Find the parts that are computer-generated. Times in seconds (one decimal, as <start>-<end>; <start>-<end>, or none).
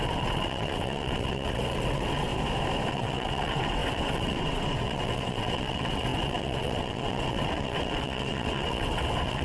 0.0-2.3; 2.9-9.4